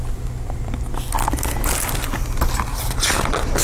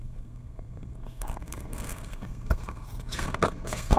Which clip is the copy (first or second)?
second